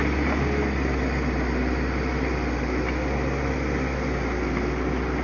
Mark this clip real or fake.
real